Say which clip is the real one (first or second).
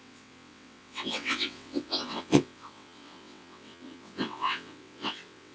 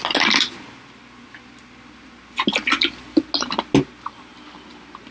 second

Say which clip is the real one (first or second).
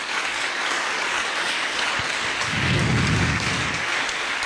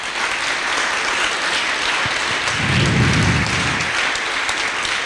second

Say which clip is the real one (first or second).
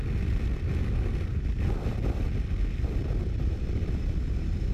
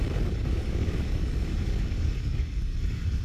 first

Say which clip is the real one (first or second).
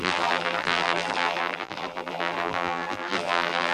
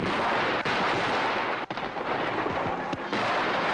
second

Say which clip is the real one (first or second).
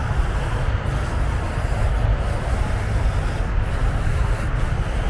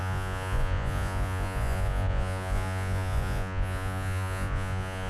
first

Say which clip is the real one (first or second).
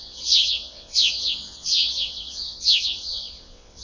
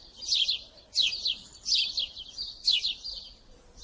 second